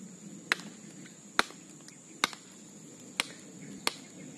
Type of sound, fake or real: real